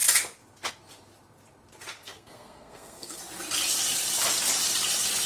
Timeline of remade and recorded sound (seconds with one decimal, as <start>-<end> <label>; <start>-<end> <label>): 0.0-2.0 recorded; 2.0-3.2 remade; 3.2-5.3 recorded